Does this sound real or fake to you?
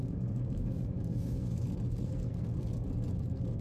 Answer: fake